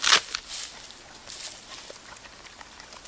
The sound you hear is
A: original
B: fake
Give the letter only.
A